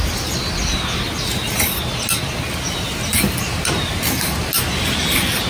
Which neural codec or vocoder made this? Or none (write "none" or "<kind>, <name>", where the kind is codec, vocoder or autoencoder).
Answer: none